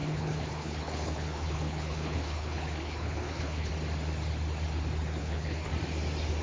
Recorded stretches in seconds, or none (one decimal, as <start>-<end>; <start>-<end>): 3.7-5.2; 5.7-6.4